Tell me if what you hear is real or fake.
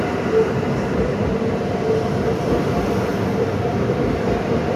real